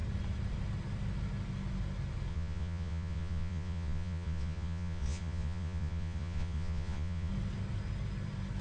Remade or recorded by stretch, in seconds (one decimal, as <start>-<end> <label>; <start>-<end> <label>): 0.0-2.3 recorded; 2.3-7.3 remade; 7.3-8.6 recorded